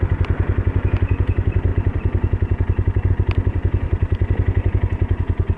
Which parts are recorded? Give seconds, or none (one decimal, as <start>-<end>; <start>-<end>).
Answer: 0.0-5.6

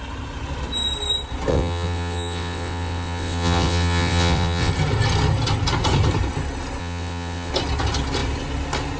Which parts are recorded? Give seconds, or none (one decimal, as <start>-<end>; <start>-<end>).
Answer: 0.0-1.5; 4.7-6.8; 7.5-9.0

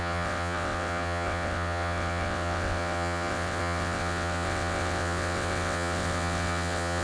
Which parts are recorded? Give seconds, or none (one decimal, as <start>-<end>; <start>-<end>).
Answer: none

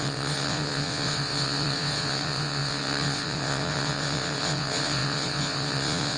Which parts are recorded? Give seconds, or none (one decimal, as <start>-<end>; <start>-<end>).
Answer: none